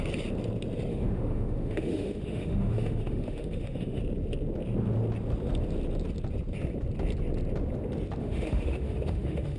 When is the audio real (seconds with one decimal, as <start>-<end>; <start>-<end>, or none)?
0.0-0.9; 4.0-8.2